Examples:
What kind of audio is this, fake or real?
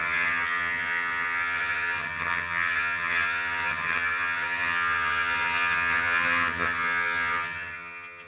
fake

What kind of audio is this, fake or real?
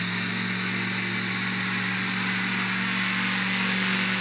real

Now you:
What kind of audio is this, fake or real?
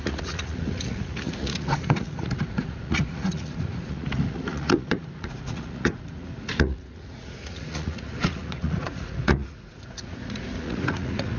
fake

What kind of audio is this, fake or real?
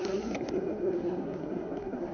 fake